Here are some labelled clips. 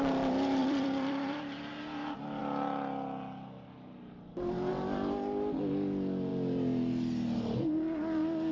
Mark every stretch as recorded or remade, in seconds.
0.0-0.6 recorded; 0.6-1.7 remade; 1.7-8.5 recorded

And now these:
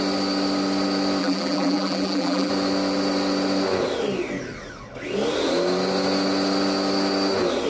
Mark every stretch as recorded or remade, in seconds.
0.0-1.2 recorded; 1.2-2.5 remade; 2.5-7.7 recorded

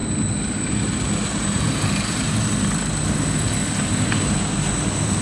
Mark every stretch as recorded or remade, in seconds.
0.0-1.3 recorded; 1.3-2.4 remade; 2.4-5.2 recorded

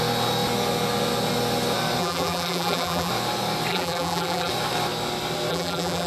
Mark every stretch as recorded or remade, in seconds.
0.0-2.0 recorded; 2.0-3.1 remade; 3.1-3.7 recorded; 3.7-4.5 remade; 4.5-5.5 recorded; 5.5-6.1 remade

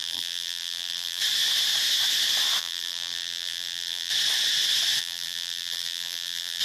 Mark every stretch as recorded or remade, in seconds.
0.0-1.2 remade; 1.2-2.6 recorded; 2.6-4.1 remade; 4.1-5.0 recorded; 5.0-6.6 remade

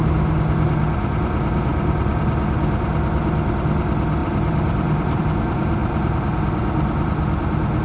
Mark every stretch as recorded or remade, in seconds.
0.0-4.2 recorded; 4.2-5.2 remade; 5.2-5.8 recorded; 5.8-6.4 remade; 6.4-7.8 recorded

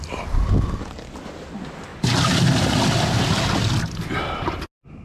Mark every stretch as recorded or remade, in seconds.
0.0-5.0 recorded